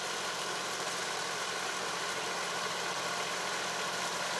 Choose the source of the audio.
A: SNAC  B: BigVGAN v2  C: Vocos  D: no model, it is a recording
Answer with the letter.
D